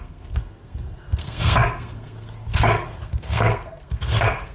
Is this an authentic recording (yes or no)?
no